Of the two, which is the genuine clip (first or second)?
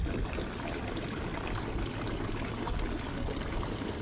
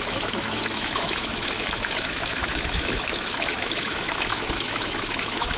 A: first